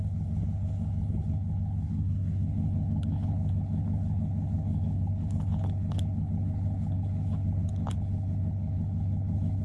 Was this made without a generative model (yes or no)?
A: no